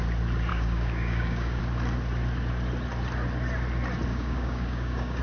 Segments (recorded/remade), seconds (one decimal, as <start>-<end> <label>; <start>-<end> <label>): 0.0-0.5 recorded; 0.5-1.6 remade; 1.6-4.1 recorded; 4.1-5.2 remade